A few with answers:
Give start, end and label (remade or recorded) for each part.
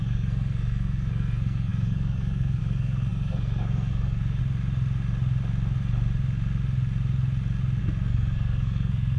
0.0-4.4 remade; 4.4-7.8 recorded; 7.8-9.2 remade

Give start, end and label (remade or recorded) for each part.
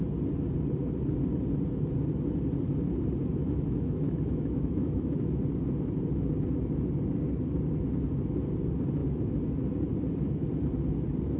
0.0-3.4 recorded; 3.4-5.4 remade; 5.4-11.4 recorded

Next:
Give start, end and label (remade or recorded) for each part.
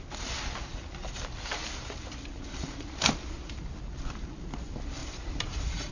0.0-5.0 recorded; 5.0-5.9 remade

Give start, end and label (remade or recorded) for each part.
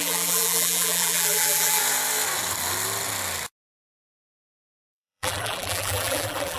0.0-1.8 remade; 1.8-4.9 recorded; 4.9-6.6 remade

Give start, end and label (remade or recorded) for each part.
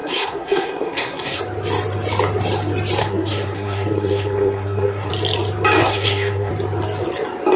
0.0-1.4 remade; 1.4-3.0 recorded; 3.0-5.1 remade; 5.1-5.8 recorded; 5.8-6.5 remade; 6.5-7.6 recorded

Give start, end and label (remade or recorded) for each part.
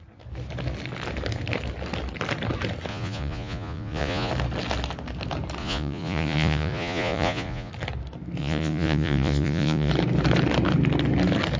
0.0-2.9 recorded; 2.9-4.3 remade; 4.3-5.6 recorded; 5.6-7.7 remade; 7.7-8.4 recorded; 8.4-9.9 remade; 9.9-11.6 recorded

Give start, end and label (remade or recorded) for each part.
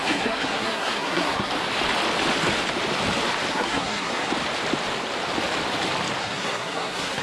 0.0-1.5 remade; 1.5-3.5 recorded; 3.5-4.3 remade; 4.3-6.2 recorded; 6.2-7.2 remade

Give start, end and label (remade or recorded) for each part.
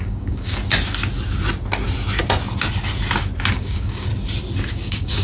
0.0-0.6 remade; 0.6-3.5 recorded; 3.5-4.1 remade; 4.1-4.7 recorded; 4.7-5.2 remade